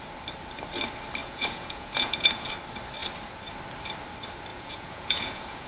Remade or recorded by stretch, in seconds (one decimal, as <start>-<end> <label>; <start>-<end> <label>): 0.0-1.2 recorded; 1.2-2.5 remade; 2.5-4.5 recorded; 4.5-5.7 remade